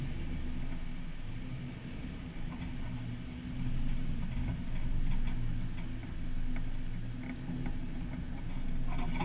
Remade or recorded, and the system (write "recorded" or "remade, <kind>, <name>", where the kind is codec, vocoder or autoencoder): recorded